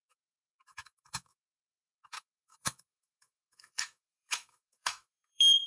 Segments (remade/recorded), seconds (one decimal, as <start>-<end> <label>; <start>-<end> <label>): 0.0-5.7 remade